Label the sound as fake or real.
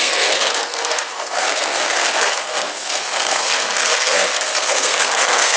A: fake